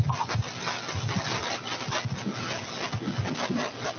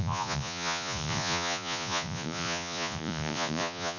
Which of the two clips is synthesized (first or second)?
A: second